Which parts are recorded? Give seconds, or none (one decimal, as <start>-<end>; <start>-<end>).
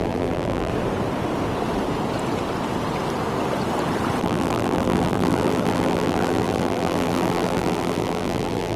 0.7-4.2